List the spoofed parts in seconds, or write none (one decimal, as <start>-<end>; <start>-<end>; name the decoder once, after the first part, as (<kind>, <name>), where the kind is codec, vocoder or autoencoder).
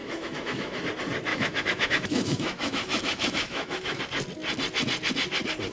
0.0-0.8 (autoencoder, DAC-VAE); 1.3-4.0